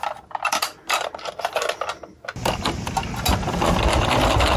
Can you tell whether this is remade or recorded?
recorded